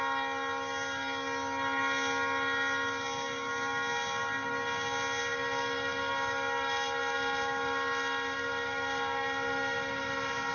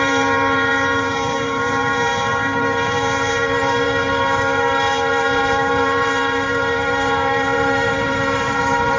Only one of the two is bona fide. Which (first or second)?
first